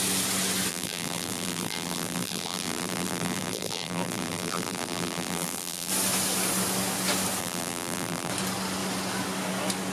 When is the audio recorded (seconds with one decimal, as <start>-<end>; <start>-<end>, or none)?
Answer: 0.0-0.7; 5.9-7.4; 8.3-9.9